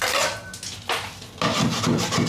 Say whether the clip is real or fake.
real